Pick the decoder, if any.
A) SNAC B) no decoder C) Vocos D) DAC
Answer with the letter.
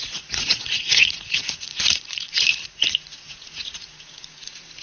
C